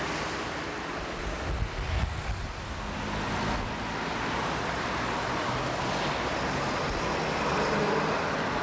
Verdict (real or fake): real